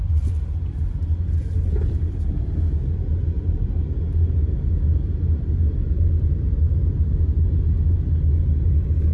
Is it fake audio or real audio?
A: real